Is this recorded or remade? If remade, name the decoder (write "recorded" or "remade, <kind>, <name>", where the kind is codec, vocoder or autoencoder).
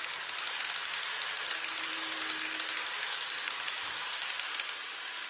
recorded